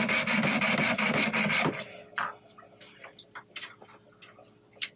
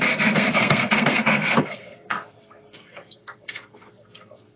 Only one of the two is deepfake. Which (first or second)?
second